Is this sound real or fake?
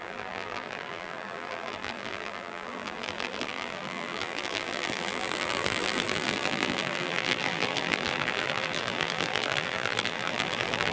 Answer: fake